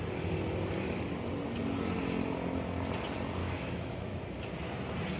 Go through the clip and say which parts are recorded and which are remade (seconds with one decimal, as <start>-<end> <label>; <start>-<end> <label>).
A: 0.0-3.4 recorded; 3.4-4.2 remade; 4.2-5.2 recorded